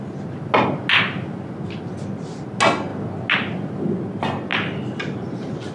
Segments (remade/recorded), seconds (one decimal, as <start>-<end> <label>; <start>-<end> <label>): 0.0-5.7 recorded